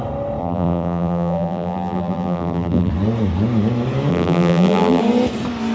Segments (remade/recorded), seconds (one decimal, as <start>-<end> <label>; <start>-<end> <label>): 0.0-0.4 recorded; 0.4-2.9 remade; 2.9-4.1 recorded; 4.1-5.0 remade; 5.0-5.7 recorded